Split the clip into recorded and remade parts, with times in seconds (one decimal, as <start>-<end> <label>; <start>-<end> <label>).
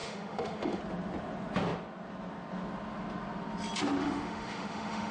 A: 0.0-0.8 remade; 0.8-4.0 recorded; 4.0-5.1 remade